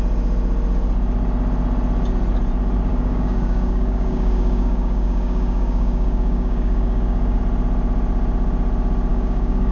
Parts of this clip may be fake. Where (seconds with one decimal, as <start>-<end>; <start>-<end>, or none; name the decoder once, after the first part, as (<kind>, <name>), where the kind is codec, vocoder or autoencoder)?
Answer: 2.9-7.4 (codec, DAC); 9.1-9.7